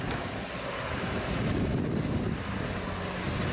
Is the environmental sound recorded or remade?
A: recorded